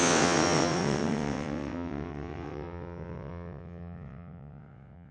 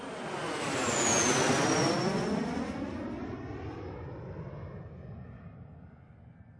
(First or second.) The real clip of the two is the second